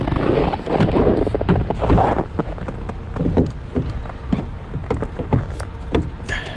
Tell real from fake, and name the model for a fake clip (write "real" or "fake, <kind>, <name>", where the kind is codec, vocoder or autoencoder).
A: real